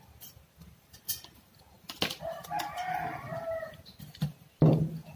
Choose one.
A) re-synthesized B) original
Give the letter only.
B